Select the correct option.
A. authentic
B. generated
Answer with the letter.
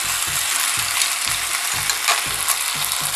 A